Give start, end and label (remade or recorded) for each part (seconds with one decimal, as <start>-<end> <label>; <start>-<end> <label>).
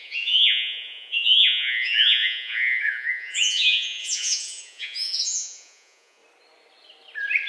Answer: 0.0-6.2 remade; 6.2-7.5 recorded